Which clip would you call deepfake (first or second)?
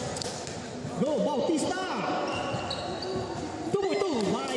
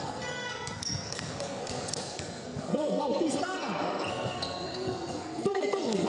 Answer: second